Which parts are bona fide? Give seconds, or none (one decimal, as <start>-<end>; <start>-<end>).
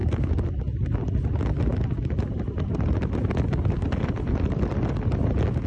0.0-5.7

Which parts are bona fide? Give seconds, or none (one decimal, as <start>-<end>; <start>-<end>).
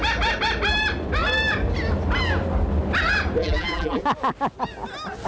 0.0-3.4; 4.0-5.3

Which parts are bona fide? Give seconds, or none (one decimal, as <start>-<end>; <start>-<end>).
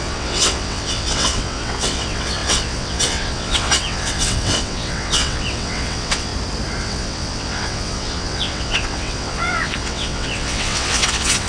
6.3-6.8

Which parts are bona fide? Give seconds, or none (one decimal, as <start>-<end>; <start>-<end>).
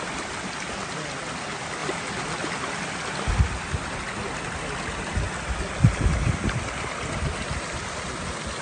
0.0-8.6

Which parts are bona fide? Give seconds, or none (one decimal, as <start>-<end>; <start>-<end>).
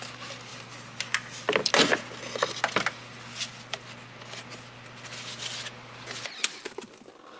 0.0-7.4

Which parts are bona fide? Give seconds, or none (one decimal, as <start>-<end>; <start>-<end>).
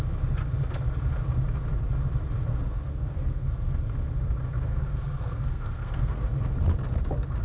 0.0-2.5; 3.8-4.7; 6.2-7.4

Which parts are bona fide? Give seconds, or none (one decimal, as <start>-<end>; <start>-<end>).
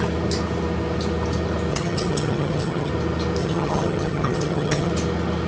0.0-1.7; 2.9-3.4; 4.9-5.5